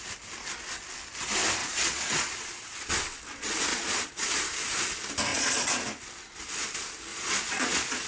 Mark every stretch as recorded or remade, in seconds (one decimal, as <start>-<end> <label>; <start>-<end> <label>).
0.0-1.6 recorded; 1.6-2.9 remade; 2.9-3.7 recorded; 3.7-4.4 remade; 4.4-5.3 recorded; 5.3-5.8 remade; 5.8-7.1 recorded; 7.1-8.1 remade